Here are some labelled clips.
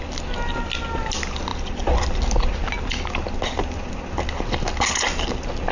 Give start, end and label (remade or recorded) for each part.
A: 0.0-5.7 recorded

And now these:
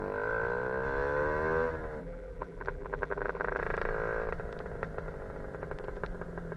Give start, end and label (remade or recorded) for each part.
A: 0.0-2.0 recorded; 2.0-3.6 remade; 3.6-6.6 recorded

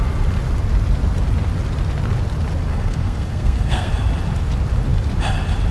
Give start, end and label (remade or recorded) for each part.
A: 0.0-2.7 recorded; 2.7-3.9 remade; 3.9-5.7 recorded

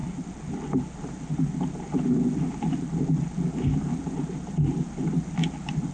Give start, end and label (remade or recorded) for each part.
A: 0.0-5.9 recorded

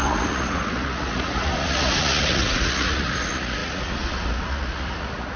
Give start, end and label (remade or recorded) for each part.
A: 0.0-5.4 remade